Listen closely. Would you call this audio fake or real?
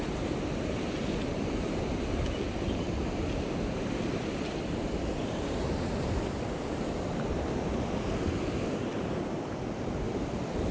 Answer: fake